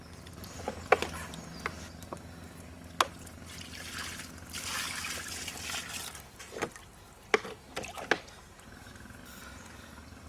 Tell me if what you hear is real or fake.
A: real